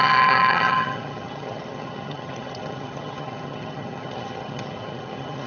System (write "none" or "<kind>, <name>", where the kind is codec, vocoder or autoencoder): vocoder, HiFi-GAN